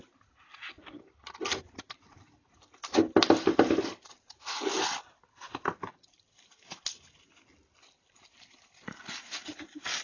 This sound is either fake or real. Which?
fake